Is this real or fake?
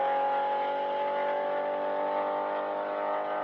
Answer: real